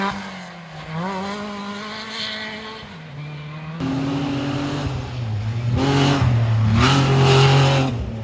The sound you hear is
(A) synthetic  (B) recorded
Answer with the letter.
B